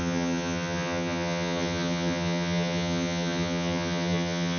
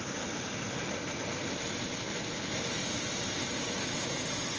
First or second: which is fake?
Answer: first